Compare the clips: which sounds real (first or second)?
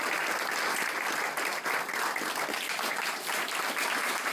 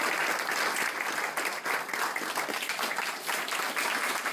second